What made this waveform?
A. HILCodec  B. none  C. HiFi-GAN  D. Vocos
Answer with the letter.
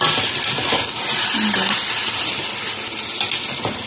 B